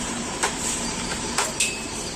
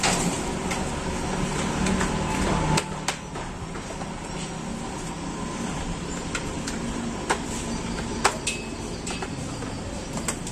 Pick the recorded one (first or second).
second